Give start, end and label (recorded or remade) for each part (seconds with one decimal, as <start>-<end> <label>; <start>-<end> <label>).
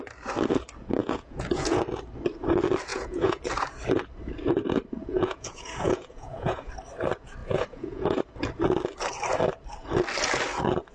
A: 0.0-1.0 recorded; 1.0-1.8 remade; 1.8-2.9 recorded; 2.9-3.4 remade; 3.4-5.0 recorded; 5.0-6.7 remade; 6.7-7.4 recorded; 7.4-8.2 remade; 8.2-10.9 recorded